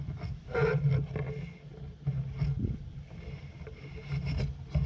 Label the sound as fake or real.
real